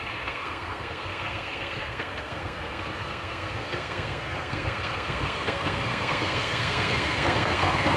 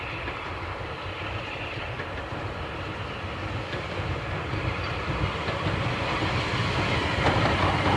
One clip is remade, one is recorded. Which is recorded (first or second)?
second